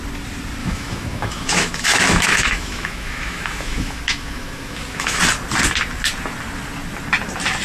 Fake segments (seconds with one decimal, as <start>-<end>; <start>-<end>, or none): 0.6-5.2